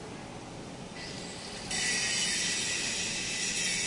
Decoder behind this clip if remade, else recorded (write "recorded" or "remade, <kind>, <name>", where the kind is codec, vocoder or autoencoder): recorded